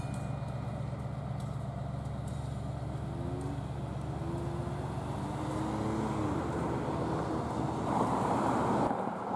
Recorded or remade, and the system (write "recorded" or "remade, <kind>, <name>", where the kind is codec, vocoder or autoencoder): recorded